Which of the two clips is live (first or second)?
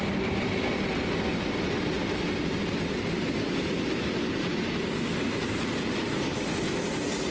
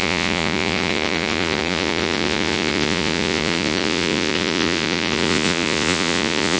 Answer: first